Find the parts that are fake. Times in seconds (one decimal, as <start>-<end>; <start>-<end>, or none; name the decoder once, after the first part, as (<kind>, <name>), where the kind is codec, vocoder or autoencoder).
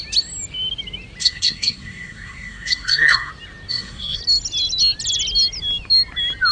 1.2-3.3 (codec, SNAC); 3.7-4.2